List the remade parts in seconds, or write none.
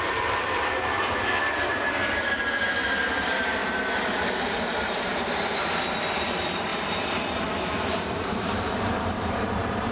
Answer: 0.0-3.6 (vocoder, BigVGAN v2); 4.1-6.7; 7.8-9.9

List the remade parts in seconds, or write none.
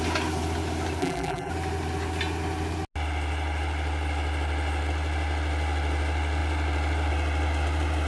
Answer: 1.0-1.5 (vocoder, BigVGAN v2)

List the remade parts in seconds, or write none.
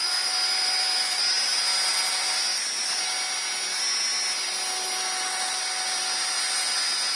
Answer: 0.0-1.2 (vocoder, BigVGAN v2)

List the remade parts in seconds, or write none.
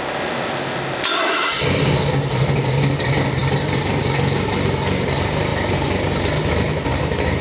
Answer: 3.4-4.0 (vocoder, BigVGAN v2)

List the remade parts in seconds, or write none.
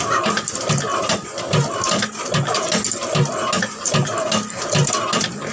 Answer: none